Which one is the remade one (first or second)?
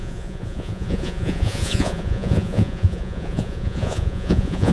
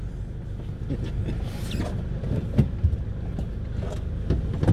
first